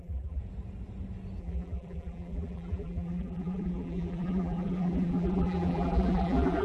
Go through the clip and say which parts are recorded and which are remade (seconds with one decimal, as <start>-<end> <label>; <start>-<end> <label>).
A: 0.0-0.4 remade; 0.4-1.4 recorded; 1.4-6.6 remade